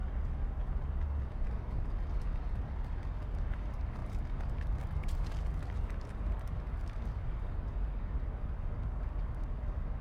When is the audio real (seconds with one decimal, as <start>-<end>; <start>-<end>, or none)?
none